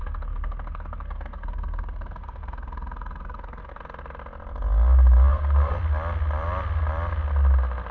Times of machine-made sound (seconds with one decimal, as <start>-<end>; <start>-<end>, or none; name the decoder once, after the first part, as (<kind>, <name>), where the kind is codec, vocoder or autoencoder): 0.0-3.8 (codec, SNAC); 5.3-5.8